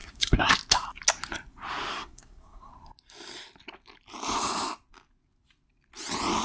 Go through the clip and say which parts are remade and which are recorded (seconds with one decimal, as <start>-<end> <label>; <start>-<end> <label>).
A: 0.0-0.5 remade; 0.5-1.9 recorded; 1.9-2.7 remade; 2.7-6.4 recorded